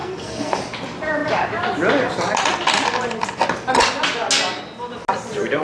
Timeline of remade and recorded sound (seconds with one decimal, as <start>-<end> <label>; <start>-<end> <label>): 0.0-0.6 remade; 0.6-5.6 recorded